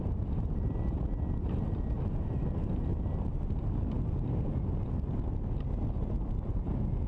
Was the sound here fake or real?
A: real